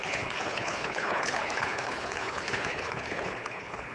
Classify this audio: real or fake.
fake